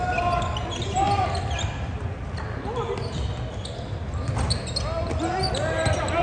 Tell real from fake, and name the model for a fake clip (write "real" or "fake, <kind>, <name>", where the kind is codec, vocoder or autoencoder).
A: real